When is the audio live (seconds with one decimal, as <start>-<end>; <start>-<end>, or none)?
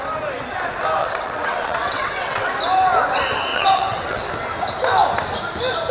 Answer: 0.0-1.0; 2.5-3.5; 4.3-5.9